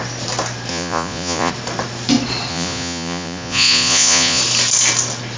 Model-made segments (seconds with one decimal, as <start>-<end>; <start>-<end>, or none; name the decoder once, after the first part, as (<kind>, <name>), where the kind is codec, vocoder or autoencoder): 0.7-1.5 (vocoder, Vocos); 2.5-4.4